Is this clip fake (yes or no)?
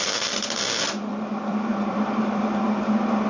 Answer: yes